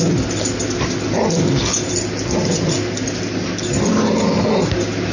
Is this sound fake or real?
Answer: real